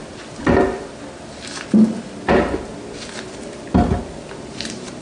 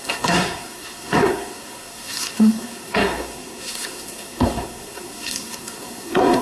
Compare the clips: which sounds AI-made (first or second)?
second